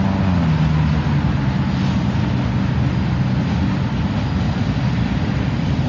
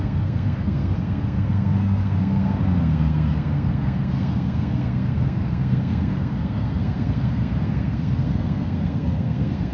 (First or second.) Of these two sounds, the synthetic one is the second